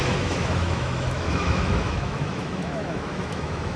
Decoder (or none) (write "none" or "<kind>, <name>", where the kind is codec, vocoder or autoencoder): autoencoder, DAC-VAE